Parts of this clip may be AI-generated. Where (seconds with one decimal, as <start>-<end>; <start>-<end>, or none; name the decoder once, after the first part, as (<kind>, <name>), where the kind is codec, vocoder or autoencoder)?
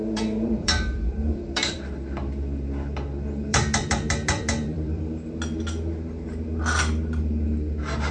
0.0-1.9 (vocoder, BigVGAN v2); 3.5-5.0